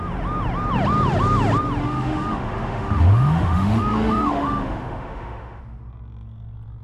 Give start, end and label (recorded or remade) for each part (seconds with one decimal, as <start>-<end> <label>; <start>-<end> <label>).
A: 0.0-1.8 recorded; 1.8-5.6 remade; 5.6-6.8 recorded

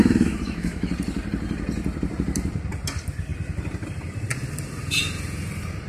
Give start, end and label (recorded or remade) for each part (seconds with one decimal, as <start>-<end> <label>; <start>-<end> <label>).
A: 0.0-0.9 remade; 0.9-5.9 recorded

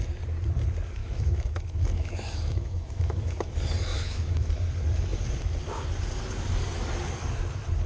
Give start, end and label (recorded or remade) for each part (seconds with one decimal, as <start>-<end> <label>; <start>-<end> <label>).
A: 0.0-1.0 recorded; 1.0-3.5 remade; 3.5-3.9 recorded; 3.9-4.5 remade; 4.5-7.9 recorded

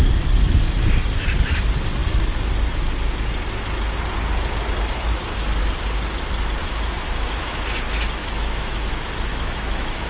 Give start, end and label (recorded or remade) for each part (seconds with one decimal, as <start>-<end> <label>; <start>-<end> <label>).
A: 0.0-6.6 recorded; 6.6-7.6 remade; 7.6-8.2 recorded; 8.2-8.9 remade; 8.9-9.3 recorded; 9.3-10.1 remade

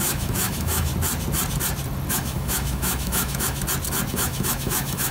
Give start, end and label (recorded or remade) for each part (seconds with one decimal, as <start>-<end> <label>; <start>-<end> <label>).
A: 0.0-0.9 remade; 0.9-2.1 recorded; 2.1-3.6 remade; 3.6-4.1 recorded; 4.1-5.1 remade

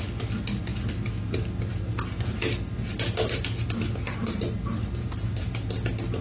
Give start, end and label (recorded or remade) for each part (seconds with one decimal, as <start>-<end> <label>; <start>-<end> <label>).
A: 0.0-6.2 recorded